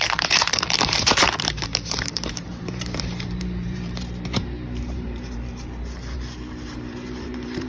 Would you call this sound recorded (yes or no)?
no